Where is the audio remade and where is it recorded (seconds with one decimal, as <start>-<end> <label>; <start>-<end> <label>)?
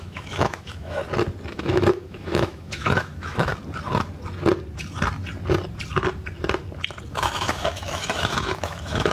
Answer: 0.0-1.0 remade; 1.0-1.5 recorded; 1.5-3.5 remade; 3.5-7.1 recorded; 7.1-9.1 remade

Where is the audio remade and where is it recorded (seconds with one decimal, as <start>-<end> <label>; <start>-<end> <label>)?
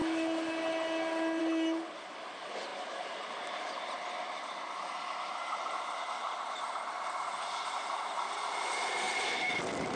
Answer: 0.0-10.0 recorded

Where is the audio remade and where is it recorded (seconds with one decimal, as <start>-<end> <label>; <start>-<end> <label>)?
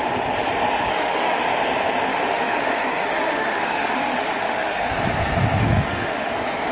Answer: 0.0-0.9 recorded; 0.9-1.4 remade; 1.4-2.1 recorded; 2.1-4.9 remade; 4.9-5.6 recorded; 5.6-6.3 remade; 6.3-6.7 recorded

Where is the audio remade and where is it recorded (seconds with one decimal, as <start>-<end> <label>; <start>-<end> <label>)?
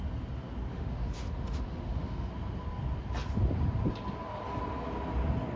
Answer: 0.0-0.7 recorded; 0.7-2.3 remade; 2.3-5.6 recorded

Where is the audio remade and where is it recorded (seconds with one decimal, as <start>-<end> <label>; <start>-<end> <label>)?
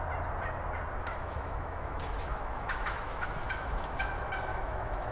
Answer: 0.0-1.0 recorded; 1.0-4.1 remade; 4.1-4.5 recorded; 4.5-5.1 remade